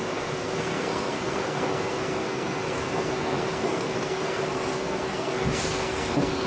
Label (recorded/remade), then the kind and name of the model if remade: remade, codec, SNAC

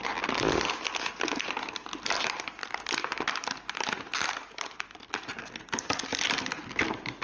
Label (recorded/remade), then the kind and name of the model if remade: recorded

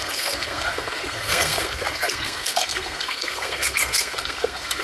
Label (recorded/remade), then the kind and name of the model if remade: remade, codec, SNAC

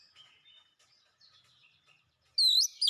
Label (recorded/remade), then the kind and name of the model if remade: recorded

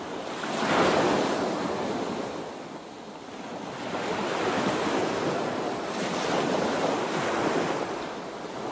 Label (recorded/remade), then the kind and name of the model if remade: recorded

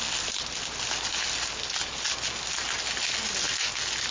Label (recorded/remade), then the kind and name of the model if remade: recorded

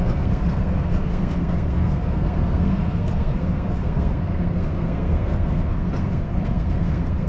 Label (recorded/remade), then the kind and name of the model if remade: remade, codec, SNAC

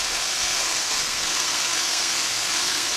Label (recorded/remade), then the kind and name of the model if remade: remade, codec, SNAC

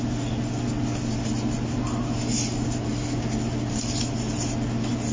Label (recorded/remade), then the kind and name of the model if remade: recorded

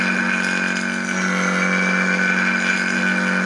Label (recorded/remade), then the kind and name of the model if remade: recorded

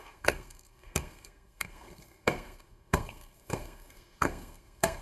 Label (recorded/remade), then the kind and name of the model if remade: remade, codec, SNAC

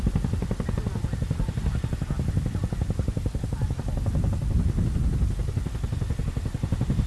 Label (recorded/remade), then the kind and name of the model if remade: recorded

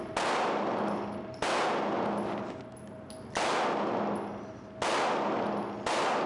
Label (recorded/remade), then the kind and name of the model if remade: recorded